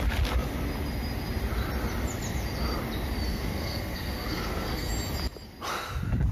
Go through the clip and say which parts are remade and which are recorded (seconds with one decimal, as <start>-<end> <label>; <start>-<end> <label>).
0.0-3.3 recorded; 3.3-4.9 remade; 4.9-6.3 recorded